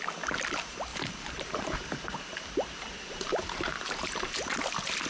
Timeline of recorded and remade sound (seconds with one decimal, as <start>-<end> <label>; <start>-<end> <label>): 0.0-0.9 recorded; 0.9-4.0 remade; 4.0-5.1 recorded